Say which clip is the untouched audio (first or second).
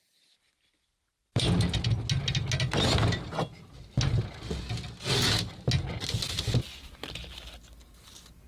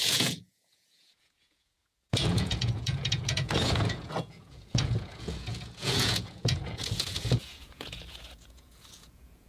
first